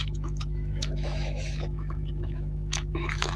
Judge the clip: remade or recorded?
remade